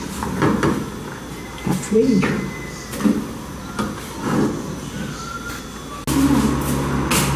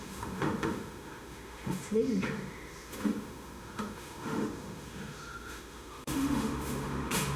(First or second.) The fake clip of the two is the second